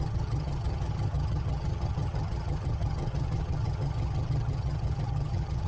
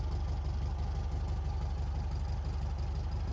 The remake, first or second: first